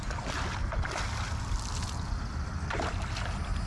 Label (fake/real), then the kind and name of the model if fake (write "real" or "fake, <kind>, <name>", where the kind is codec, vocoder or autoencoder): real